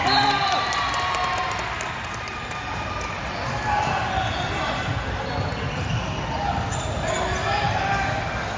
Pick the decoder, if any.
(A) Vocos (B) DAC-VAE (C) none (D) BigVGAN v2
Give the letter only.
C